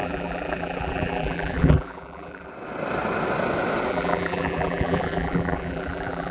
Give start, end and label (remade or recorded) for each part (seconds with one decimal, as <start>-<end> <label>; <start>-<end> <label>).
0.0-2.5 remade; 2.5-3.9 recorded; 3.9-6.3 remade